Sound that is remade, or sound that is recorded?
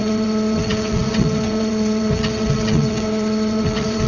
remade